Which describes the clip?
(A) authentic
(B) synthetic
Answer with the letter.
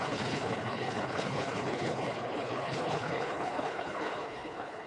B